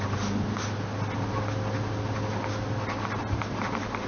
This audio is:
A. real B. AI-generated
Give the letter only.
A